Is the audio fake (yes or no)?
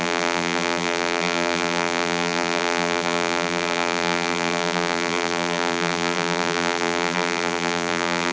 yes